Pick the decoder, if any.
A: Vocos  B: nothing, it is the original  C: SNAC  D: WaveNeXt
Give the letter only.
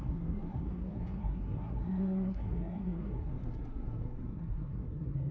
C